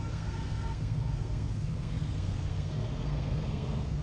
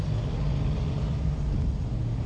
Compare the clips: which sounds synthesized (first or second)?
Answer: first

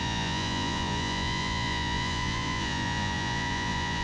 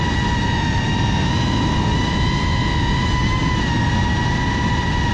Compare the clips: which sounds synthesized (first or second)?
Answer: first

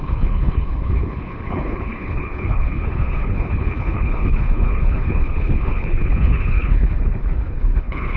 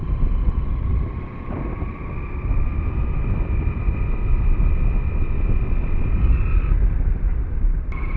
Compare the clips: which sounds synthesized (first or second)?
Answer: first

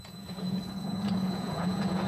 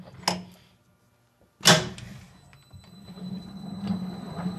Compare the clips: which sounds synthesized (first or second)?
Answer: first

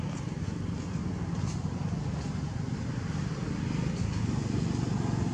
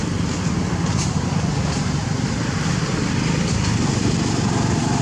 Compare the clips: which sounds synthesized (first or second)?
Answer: second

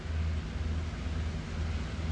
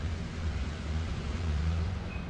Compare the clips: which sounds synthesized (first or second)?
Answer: second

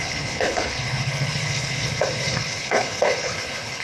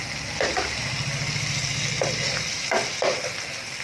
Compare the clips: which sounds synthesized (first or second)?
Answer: first